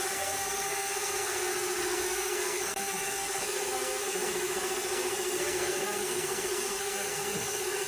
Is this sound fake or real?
fake